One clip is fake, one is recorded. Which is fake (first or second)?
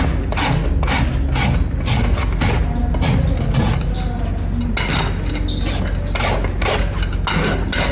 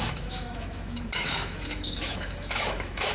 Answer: second